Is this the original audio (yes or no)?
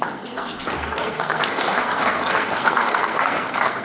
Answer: no